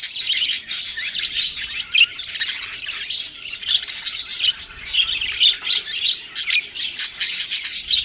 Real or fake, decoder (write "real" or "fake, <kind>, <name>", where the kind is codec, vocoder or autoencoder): real